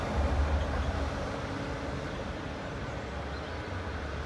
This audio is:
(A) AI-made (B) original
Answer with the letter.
B